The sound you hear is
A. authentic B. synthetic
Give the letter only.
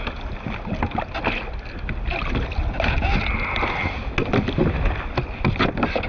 A